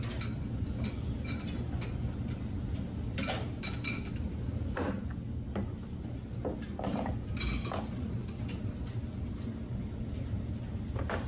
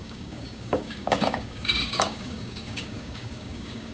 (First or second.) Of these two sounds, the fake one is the second